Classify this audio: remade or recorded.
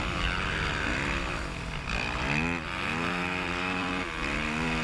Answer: recorded